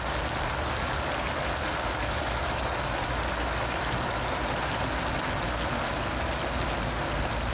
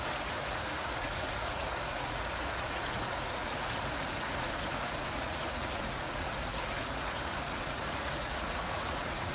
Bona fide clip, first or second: first